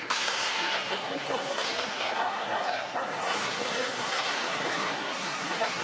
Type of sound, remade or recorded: remade